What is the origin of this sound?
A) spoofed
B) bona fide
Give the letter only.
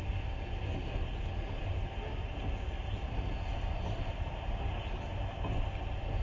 B